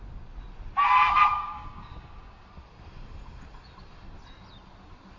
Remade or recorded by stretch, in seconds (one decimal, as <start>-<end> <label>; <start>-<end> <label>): 0.0-1.3 recorded; 1.3-2.5 remade; 2.5-5.2 recorded